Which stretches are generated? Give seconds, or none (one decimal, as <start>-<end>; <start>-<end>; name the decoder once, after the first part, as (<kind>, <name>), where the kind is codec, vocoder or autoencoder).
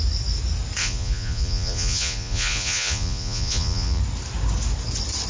0.8-4.0 (vocoder, Vocos)